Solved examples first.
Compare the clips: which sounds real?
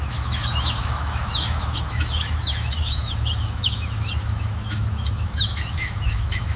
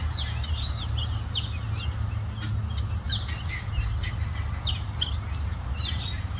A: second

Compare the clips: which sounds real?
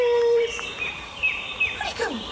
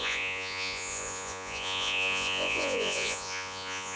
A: first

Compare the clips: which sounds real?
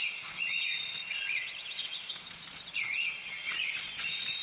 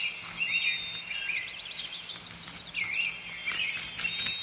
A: second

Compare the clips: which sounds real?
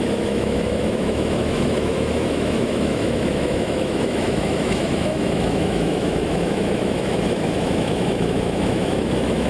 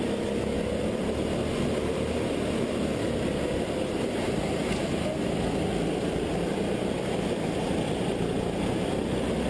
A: second